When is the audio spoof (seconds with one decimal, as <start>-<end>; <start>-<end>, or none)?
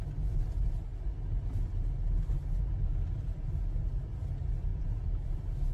4.7-5.3